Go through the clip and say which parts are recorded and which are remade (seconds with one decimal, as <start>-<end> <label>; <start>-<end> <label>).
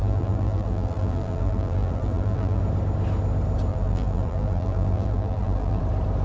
0.0-2.6 remade; 2.6-3.7 recorded; 3.7-5.8 remade; 5.8-6.2 recorded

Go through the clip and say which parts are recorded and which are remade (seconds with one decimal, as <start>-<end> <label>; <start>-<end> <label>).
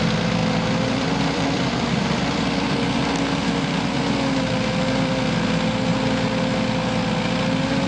0.0-0.4 recorded; 0.4-5.1 remade; 5.1-5.9 recorded; 5.9-6.4 remade; 6.4-7.9 recorded